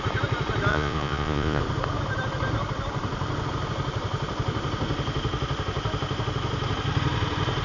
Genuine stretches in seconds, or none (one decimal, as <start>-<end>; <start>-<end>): 0.0-0.7; 1.6-7.6